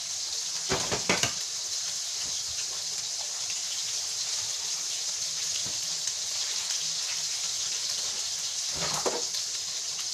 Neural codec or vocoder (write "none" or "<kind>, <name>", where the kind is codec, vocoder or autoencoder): none